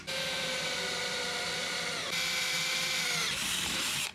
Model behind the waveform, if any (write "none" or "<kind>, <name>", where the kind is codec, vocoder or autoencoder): none